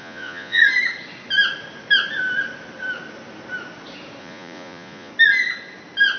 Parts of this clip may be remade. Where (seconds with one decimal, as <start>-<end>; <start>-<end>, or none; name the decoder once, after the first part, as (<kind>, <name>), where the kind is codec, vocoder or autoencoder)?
0.0-0.6 (vocoder, Vocos); 4.2-5.1